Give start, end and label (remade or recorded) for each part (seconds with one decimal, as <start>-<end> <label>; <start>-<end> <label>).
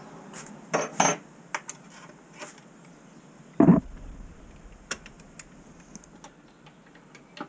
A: 0.0-7.5 recorded